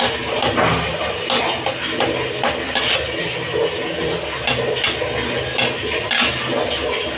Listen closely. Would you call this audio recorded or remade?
recorded